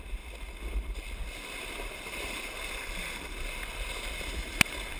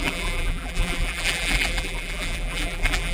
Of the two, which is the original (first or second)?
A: first